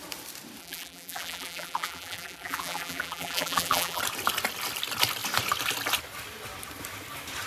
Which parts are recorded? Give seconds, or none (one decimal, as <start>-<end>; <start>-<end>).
0.0-0.6; 4.0-7.5